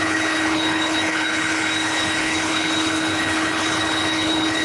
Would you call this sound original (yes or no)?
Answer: no